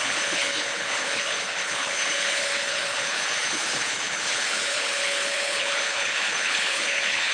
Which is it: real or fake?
fake